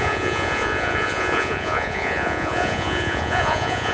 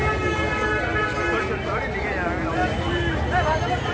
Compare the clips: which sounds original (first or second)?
second